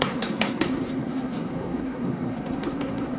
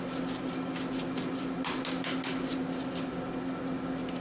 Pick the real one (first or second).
second